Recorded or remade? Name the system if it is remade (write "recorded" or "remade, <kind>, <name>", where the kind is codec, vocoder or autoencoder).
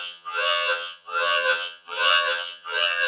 remade, vocoder, HiFi-GAN